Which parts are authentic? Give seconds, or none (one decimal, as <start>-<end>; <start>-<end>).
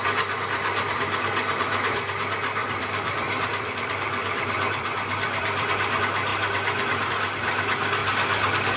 0.0-2.6; 5.7-8.8